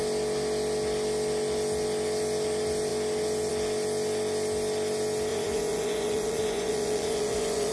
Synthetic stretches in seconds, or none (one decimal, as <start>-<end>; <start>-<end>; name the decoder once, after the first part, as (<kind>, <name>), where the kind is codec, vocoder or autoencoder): 5.3-7.7 (vocoder, Vocos)

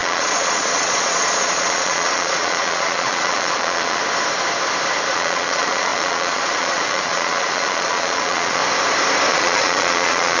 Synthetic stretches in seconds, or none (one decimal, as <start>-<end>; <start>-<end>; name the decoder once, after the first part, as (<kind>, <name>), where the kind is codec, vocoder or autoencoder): 0.0-4.0 (vocoder, Vocos); 5.1-8.6; 9.3-10.4

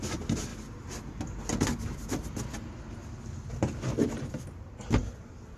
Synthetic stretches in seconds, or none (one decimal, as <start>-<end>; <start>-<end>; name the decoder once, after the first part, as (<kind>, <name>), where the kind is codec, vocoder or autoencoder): none

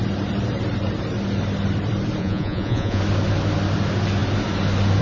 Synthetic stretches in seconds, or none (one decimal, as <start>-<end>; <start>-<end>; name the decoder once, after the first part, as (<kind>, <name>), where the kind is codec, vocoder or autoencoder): 2.2-3.0 (vocoder, Vocos)

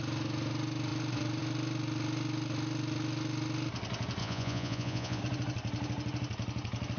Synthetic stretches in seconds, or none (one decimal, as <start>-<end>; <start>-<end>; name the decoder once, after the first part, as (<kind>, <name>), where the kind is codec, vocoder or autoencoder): 4.2-5.2 (vocoder, Vocos)

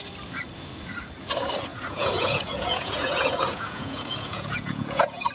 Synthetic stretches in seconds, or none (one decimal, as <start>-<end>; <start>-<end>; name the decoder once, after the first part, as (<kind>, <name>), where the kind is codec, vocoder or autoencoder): 1.7-5.3 (vocoder, Vocos)